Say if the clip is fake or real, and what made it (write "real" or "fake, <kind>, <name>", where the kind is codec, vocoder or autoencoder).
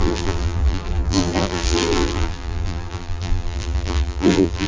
fake, vocoder, BigVGAN v2